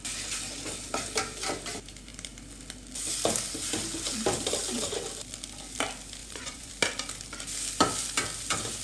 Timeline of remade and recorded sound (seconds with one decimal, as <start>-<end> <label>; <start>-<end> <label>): 0.0-6.2 recorded; 6.2-6.7 remade; 6.7-8.8 recorded